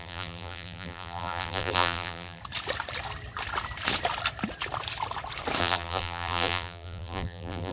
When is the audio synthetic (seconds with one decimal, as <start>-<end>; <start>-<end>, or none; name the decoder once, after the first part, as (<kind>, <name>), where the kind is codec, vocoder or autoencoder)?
0.0-2.4 (vocoder, BigVGAN v2); 5.6-7.7